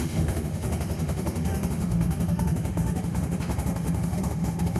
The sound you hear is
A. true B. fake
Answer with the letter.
B